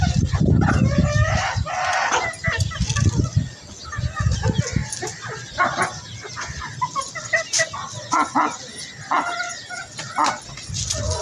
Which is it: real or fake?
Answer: real